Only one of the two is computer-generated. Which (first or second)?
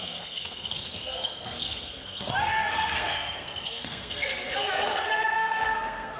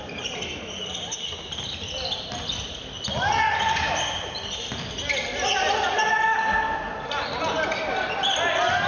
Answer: first